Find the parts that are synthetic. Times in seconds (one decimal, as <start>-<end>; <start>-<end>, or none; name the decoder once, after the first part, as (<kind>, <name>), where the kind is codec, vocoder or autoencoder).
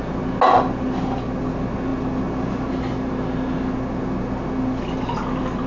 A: none